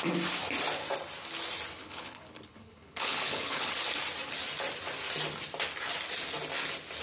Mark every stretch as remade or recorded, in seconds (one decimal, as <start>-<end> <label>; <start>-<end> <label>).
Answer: 0.0-1.8 recorded; 1.8-3.7 remade; 3.7-7.0 recorded